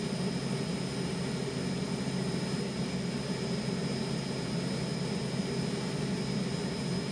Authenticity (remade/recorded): recorded